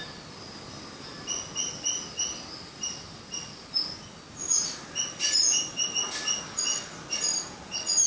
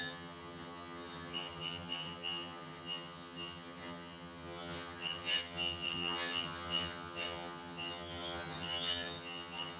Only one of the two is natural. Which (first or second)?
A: first